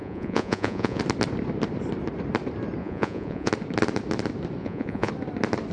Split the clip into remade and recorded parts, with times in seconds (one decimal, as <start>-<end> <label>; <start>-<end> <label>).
0.0-1.0 remade; 1.0-2.8 recorded; 2.8-3.5 remade; 3.5-4.6 recorded; 4.6-5.1 remade; 5.1-5.7 recorded